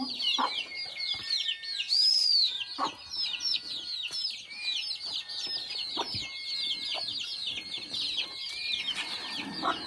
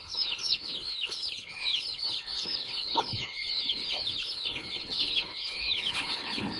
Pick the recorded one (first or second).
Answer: first